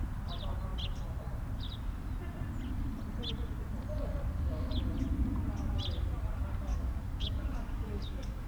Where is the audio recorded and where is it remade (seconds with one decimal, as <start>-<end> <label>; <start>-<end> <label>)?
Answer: 0.0-6.7 recorded; 6.7-8.5 remade